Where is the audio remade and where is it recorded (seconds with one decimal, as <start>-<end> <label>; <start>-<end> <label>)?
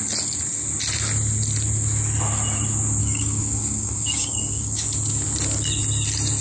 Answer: 0.0-3.0 recorded; 3.0-4.9 remade; 4.9-6.4 recorded